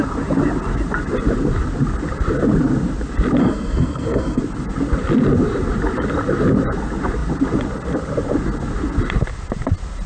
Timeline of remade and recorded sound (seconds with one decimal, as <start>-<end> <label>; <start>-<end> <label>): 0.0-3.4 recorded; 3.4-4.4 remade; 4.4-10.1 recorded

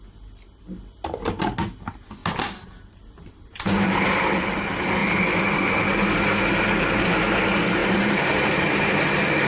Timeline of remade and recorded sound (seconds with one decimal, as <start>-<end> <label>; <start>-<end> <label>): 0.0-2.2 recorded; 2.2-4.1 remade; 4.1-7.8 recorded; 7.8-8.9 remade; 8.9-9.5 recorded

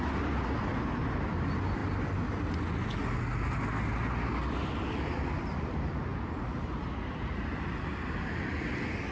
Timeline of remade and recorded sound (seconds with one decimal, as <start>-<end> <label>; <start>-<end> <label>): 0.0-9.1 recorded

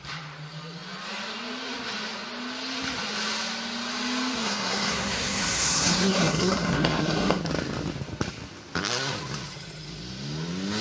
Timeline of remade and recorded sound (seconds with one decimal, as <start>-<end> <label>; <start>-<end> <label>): 0.0-4.4 recorded; 4.4-7.4 remade; 7.4-10.8 recorded

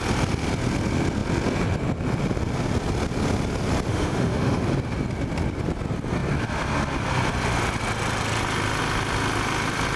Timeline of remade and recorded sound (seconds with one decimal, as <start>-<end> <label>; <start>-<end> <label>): 0.0-3.9 recorded; 3.9-4.6 remade; 4.6-10.0 recorded

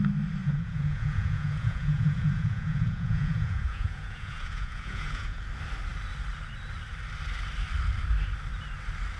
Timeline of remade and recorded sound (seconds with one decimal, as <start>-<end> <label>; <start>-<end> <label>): 0.0-0.4 recorded; 0.4-5.4 remade; 5.4-9.2 recorded